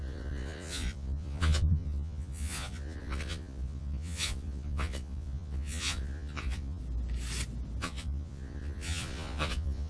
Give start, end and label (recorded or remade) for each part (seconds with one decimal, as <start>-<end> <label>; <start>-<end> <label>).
0.0-6.8 remade; 6.8-7.8 recorded; 7.8-9.9 remade

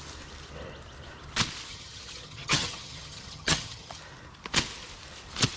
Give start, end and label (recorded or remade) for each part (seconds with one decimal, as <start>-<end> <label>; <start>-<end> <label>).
0.0-1.7 recorded; 1.7-4.0 remade; 4.0-5.6 recorded